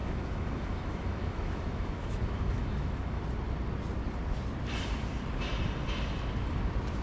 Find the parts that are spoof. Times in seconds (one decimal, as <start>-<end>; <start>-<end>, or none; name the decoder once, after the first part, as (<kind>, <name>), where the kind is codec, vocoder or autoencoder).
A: 0.0-3.2 (autoencoder, DAC-VAE)